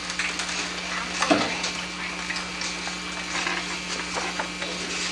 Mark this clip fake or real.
real